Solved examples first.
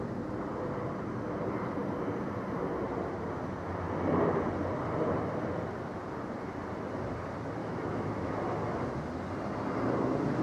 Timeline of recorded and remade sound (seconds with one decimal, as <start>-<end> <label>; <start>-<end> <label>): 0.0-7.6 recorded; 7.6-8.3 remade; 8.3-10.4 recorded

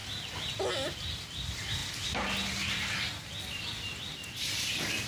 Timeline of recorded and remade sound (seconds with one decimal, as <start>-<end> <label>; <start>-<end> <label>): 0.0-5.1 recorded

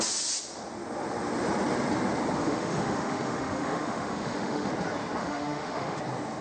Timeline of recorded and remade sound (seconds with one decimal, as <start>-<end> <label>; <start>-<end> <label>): 0.0-2.4 recorded; 2.4-4.7 remade; 4.7-5.2 recorded; 5.2-6.0 remade; 6.0-6.4 recorded

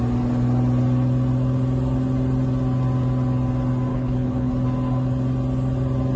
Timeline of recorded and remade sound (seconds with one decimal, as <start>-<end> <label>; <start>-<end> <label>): 0.0-3.9 recorded; 3.9-4.5 remade; 4.5-6.2 recorded

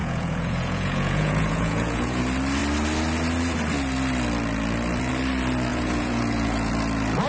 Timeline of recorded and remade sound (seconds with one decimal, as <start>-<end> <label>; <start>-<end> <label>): 0.0-2.2 remade; 2.2-5.7 recorded; 5.7-6.7 remade; 6.7-7.3 recorded

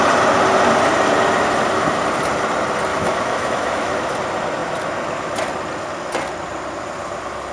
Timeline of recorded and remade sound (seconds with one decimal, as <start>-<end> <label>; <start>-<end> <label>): 0.0-2.9 recorded; 2.9-3.9 remade; 3.9-7.5 recorded

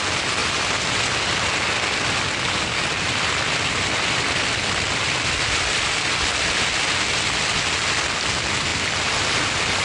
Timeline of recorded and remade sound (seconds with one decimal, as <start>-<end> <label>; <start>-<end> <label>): 0.0-9.8 recorded

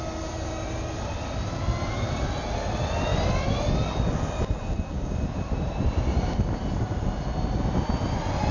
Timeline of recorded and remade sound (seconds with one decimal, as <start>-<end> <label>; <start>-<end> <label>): 0.0-8.5 recorded